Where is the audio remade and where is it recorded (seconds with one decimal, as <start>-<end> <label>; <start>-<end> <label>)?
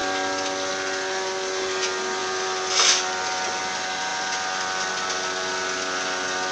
0.0-2.2 recorded; 2.2-3.6 remade; 3.6-4.1 recorded; 4.1-4.9 remade; 4.9-6.5 recorded